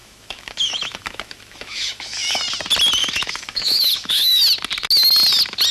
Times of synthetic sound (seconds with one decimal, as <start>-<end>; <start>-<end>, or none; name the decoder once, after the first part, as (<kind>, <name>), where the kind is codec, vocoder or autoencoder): 0.0-2.4 (autoencoder, DAC-VAE); 3.0-4.4